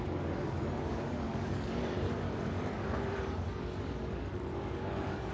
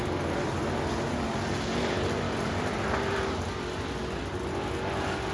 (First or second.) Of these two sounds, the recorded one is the second